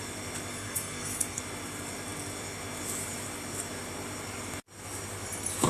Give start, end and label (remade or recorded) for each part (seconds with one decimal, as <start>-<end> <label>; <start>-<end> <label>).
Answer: 0.0-0.5 recorded; 0.5-1.4 remade; 1.4-5.7 recorded